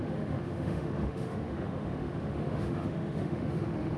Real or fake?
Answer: fake